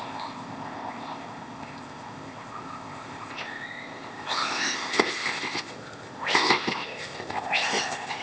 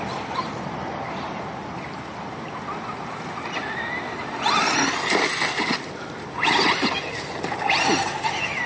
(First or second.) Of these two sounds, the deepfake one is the first